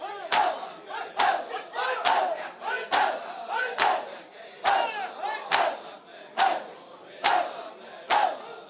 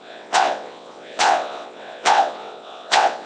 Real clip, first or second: first